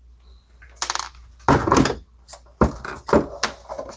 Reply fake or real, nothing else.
real